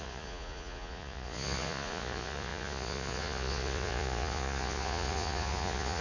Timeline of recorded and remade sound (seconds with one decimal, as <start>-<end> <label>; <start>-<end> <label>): 0.0-6.0 remade